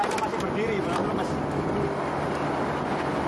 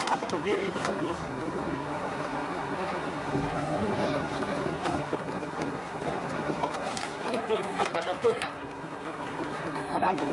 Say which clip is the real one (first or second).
first